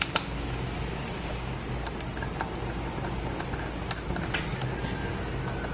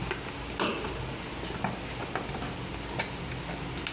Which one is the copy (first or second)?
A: first